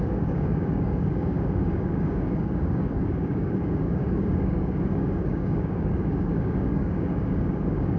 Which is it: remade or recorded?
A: remade